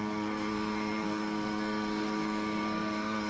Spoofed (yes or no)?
yes